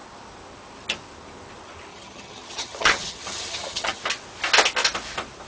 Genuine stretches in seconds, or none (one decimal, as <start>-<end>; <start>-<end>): 0.0-1.9; 4.0-5.5